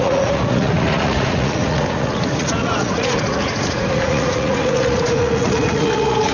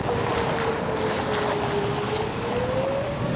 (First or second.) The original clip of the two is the second